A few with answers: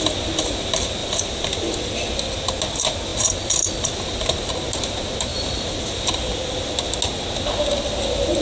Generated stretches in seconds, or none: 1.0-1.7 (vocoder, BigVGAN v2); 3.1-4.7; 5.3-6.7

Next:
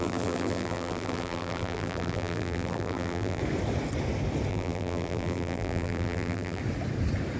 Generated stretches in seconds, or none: 0.0-3.4 (vocoder, BigVGAN v2); 4.5-6.6